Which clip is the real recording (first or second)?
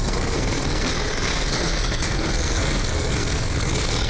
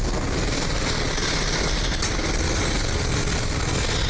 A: second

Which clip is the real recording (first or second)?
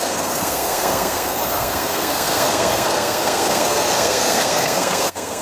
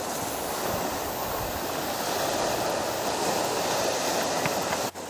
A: second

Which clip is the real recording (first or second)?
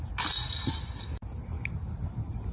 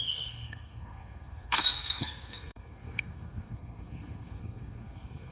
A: first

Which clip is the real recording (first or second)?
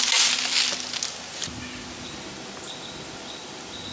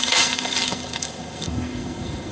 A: first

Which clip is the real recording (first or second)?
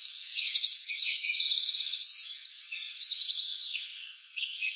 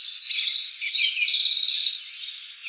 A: second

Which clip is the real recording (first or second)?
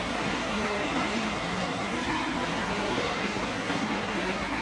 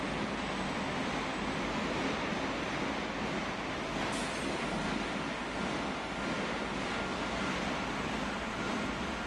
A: second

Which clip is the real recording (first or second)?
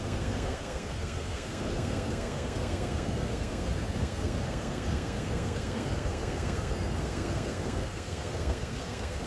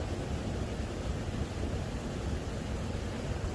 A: second